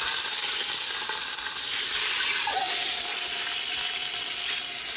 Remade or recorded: recorded